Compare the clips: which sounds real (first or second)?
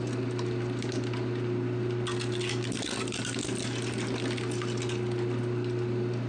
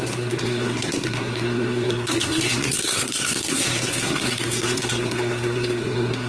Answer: first